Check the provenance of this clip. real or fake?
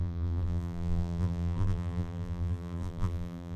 fake